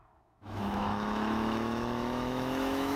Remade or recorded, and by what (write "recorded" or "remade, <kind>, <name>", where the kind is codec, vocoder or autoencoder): remade, autoencoder, DAC-VAE